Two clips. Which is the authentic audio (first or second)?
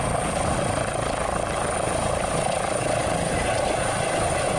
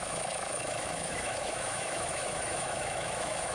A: first